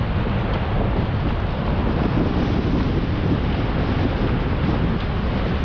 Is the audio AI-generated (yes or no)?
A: no